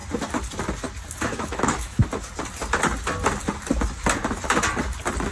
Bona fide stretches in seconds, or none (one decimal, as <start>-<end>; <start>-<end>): 0.0-1.2; 2.0-5.3